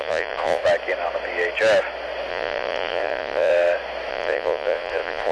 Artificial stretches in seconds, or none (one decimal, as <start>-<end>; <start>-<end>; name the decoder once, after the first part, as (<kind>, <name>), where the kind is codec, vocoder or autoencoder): 0.0-0.6 (vocoder, Vocos); 2.3-3.5; 4.1-5.3